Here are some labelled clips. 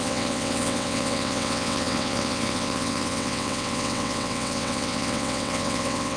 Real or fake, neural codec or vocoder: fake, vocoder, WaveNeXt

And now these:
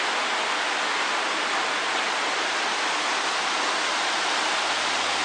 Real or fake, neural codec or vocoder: real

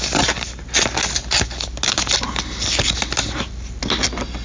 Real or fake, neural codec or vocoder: real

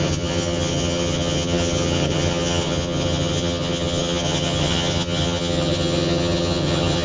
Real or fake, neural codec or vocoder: fake, vocoder, HiFi-GAN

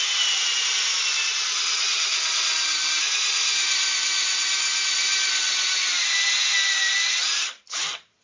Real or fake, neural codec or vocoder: real